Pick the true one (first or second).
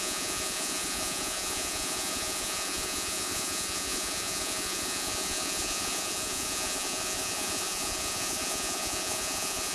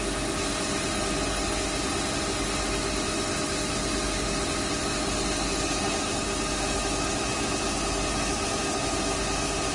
second